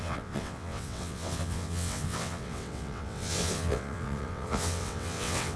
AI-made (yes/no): yes